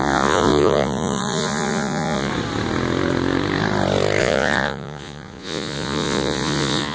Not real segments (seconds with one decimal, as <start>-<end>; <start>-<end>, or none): 0.0-2.3; 4.2-6.9

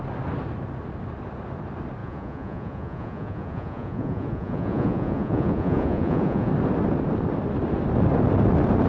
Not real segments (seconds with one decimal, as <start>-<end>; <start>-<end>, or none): 2.0-6.5